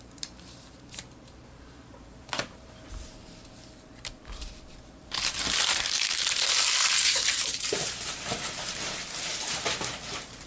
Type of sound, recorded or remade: remade